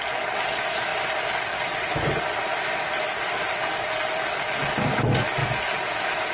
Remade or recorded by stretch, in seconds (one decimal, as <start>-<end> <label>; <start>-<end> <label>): 0.0-6.3 recorded